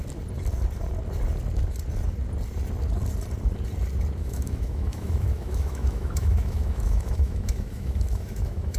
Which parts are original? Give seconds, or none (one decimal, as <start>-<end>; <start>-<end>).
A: 0.0-4.2